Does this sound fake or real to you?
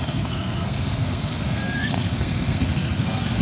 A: fake